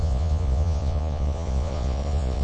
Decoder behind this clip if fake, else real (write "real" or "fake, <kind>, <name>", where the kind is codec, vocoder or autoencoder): fake, vocoder, Vocos